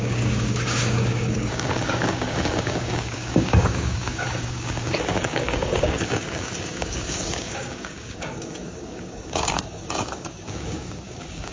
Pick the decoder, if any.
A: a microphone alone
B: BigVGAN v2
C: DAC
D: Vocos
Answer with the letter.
C